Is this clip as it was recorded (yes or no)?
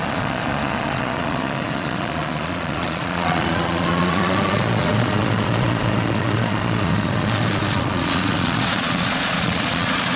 no